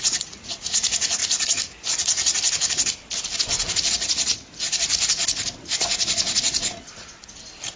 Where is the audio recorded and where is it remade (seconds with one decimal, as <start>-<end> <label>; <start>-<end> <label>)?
0.0-1.2 remade; 1.2-3.9 recorded; 3.9-7.2 remade; 7.2-7.8 recorded